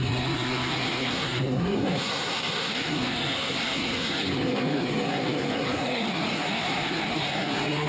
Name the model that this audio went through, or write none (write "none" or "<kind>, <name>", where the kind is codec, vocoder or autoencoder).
codec, SNAC